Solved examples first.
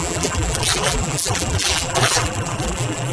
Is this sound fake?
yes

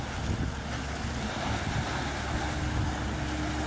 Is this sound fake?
no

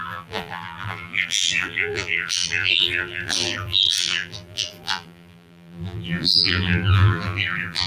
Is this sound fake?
yes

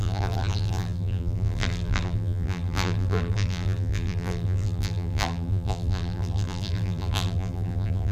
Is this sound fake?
yes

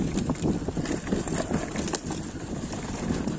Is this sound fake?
no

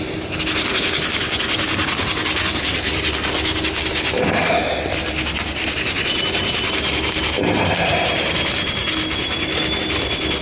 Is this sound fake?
no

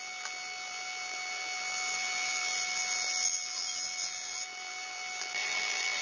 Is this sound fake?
yes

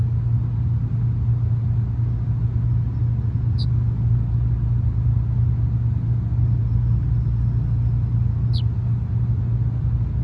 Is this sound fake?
no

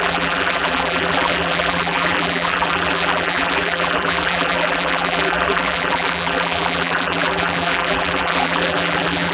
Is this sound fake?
yes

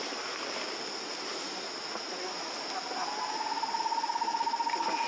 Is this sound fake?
no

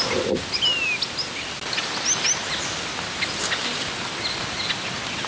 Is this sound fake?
no